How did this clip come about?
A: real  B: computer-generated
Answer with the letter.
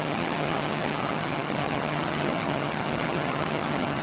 B